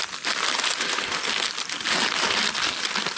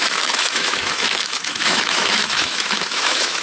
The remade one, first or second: second